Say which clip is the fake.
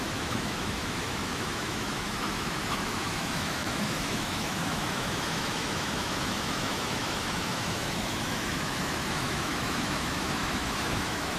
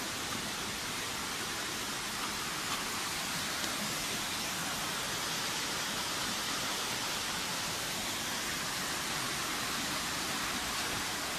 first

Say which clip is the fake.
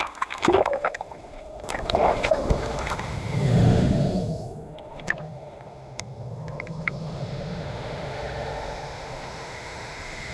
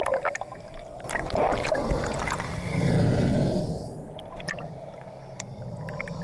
first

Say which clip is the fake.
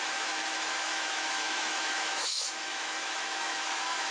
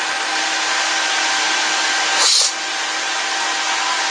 first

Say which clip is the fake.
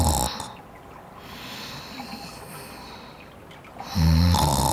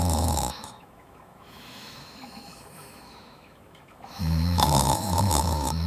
second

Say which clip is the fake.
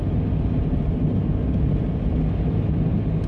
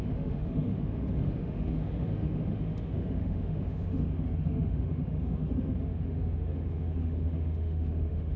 second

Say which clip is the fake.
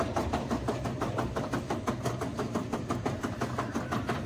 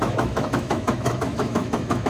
second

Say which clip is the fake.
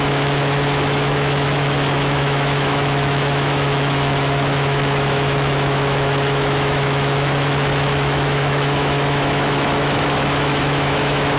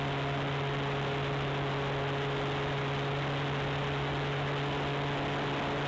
first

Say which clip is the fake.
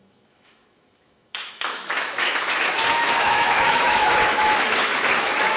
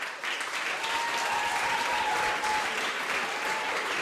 first